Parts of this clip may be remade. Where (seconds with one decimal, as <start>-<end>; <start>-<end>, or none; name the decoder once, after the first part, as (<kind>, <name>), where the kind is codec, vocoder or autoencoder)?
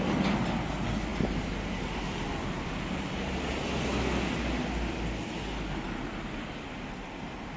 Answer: none